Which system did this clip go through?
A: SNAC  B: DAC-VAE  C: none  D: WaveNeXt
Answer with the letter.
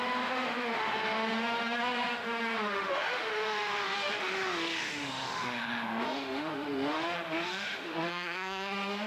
B